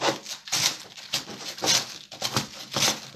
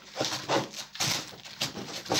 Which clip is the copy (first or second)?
second